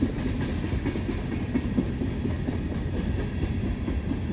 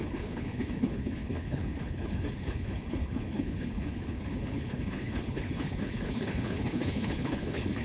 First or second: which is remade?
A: second